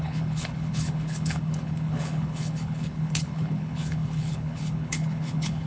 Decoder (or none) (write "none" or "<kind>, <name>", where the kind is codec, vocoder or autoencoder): codec, HILCodec